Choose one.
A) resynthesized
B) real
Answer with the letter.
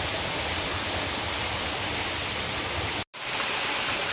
B